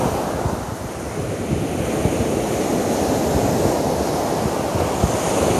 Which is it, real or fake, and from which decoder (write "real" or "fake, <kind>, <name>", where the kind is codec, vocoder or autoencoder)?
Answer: real